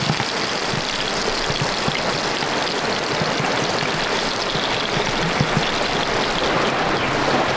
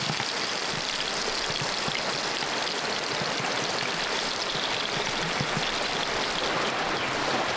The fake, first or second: second